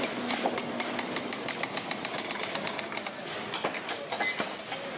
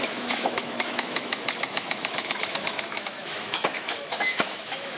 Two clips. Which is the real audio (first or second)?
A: first